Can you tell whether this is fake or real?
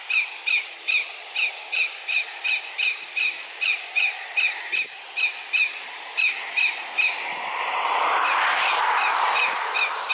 real